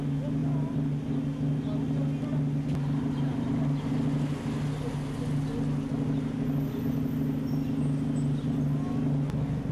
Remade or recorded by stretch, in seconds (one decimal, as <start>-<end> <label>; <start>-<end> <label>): 0.0-9.7 recorded